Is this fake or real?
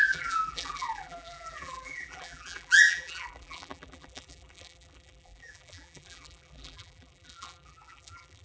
fake